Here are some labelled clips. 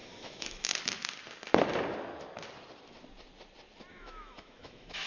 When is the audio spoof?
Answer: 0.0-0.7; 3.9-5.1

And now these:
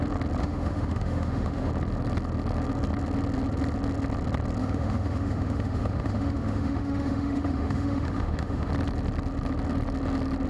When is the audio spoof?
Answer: 0.4-1.7; 4.6-8.7

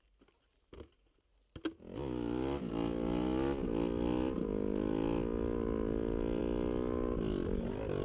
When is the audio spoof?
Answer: none